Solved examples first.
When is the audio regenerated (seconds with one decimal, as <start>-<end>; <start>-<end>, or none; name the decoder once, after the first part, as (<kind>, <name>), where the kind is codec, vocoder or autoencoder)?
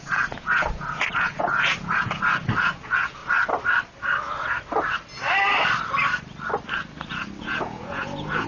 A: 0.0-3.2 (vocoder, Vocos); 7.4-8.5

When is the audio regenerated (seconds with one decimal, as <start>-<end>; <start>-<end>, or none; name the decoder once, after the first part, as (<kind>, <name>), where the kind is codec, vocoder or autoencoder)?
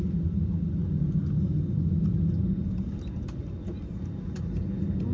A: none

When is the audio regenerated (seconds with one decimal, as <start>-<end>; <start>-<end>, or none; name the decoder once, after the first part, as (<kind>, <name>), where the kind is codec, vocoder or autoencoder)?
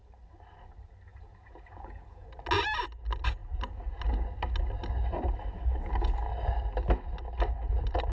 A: 1.1-2.3 (vocoder, Vocos)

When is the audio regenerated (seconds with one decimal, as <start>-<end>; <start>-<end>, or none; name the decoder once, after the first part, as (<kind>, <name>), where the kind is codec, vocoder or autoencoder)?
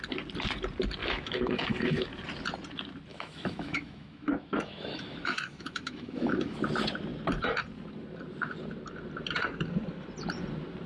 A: 1.0-2.1 (autoencoder, DAC-VAE); 3.1-6.6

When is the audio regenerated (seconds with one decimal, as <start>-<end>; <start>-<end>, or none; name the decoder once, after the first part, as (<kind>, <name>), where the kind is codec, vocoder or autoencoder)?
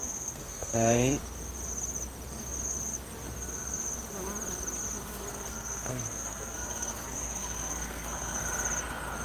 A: 0.0-1.2 (codec, SNAC); 5.3-8.4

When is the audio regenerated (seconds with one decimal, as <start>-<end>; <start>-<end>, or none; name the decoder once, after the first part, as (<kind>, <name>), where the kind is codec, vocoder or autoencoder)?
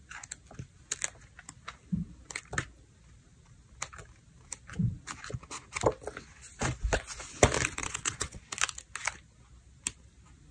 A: 7.8-8.4 (vocoder, WaveNeXt)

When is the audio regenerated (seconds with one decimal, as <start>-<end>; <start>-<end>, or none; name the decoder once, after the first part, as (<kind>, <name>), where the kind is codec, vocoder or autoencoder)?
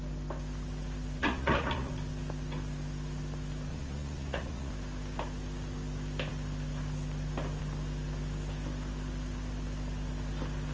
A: 1.2-1.9 (vocoder, Vocos); 3.7-4.7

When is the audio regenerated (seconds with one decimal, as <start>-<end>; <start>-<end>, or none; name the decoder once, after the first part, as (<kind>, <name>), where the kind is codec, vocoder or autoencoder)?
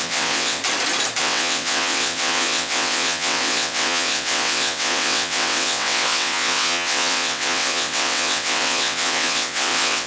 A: 0.0-0.6 (vocoder, WaveNeXt); 1.2-10.1